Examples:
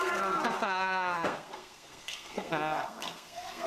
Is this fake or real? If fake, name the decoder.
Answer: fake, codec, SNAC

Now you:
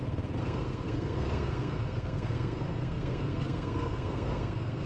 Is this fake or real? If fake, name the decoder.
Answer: fake, codec, SNAC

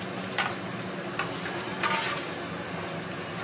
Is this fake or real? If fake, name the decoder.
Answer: real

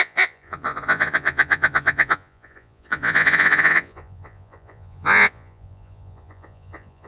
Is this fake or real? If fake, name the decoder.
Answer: fake, vocoder, Vocos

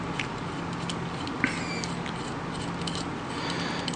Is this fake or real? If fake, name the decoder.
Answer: real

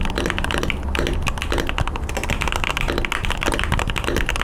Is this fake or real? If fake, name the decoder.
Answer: real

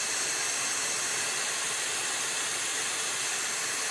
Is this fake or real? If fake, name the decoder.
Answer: real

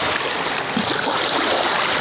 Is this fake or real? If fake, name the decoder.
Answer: real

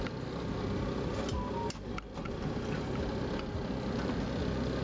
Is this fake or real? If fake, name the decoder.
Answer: real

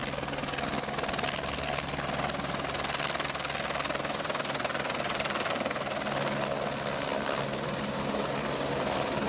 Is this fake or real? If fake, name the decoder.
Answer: real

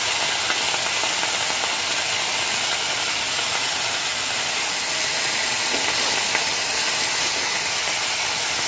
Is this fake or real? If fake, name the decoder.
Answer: real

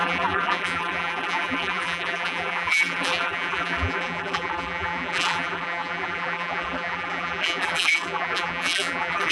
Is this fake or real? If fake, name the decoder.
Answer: fake, vocoder, BigVGAN v2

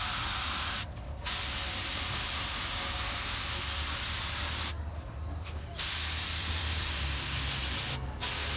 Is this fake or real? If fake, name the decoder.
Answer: real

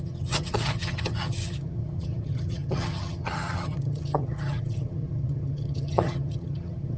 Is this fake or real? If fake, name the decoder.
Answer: fake, vocoder, HiFi-GAN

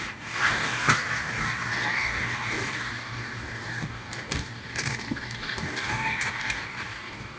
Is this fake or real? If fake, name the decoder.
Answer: fake, codec, DAC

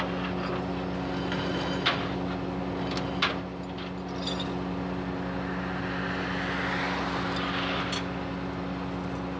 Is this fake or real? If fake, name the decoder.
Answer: real